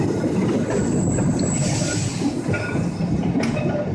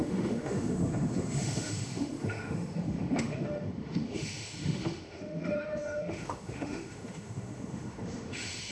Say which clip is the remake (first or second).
second